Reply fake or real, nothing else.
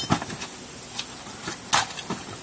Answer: real